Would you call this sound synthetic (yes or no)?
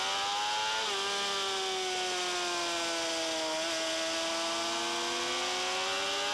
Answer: no